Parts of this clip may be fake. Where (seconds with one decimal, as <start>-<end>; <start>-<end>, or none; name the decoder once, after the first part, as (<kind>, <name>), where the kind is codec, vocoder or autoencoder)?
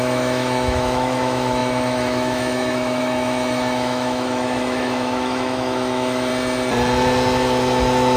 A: 0.0-6.3 (autoencoder, DAC-VAE)